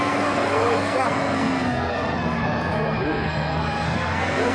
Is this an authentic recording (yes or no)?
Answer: no